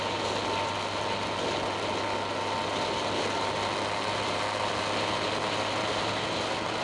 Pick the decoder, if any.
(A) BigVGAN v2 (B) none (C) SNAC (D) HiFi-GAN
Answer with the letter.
B